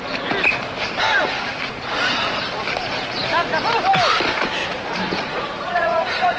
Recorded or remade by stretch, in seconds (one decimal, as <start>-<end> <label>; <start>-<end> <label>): 0.0-1.1 recorded; 1.1-2.3 remade; 2.3-4.6 recorded; 4.6-6.4 remade